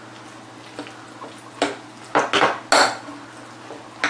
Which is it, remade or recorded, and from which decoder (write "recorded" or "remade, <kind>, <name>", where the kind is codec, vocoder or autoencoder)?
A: recorded